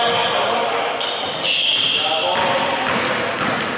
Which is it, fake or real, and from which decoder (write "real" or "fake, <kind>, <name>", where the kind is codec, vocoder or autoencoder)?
real